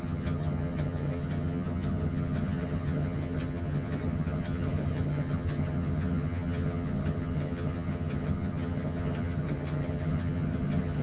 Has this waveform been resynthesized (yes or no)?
yes